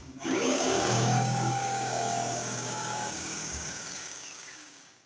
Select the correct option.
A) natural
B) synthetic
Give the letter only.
B